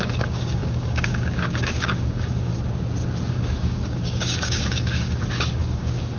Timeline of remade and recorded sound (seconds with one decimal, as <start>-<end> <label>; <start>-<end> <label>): 0.0-2.5 remade; 2.5-3.3 recorded; 3.3-6.2 remade